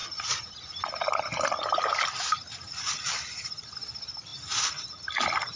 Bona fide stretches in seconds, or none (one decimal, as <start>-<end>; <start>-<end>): 0.0-2.7; 4.3-5.6